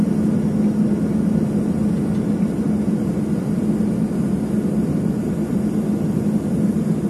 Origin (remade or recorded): recorded